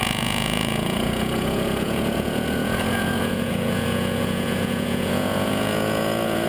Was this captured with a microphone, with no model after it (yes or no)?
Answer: no